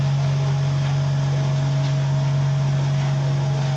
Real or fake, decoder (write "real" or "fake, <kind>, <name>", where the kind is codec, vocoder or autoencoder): real